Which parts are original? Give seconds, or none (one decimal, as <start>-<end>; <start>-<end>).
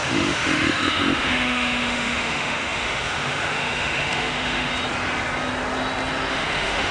4.7-6.3